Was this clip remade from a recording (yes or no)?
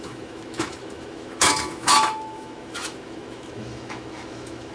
yes